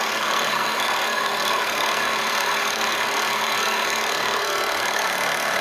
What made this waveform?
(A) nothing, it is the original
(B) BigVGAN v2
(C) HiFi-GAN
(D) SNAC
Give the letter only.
D